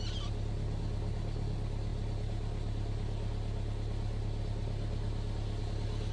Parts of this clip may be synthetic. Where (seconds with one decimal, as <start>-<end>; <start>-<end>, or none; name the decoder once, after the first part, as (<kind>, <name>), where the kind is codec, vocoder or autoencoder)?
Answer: none